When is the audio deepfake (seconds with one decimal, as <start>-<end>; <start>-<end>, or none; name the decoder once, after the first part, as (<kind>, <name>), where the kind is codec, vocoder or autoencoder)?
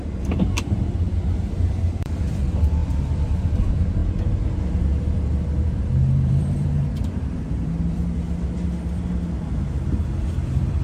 0.0-4.0 (vocoder, BigVGAN v2); 5.7-8.0; 10.0-10.8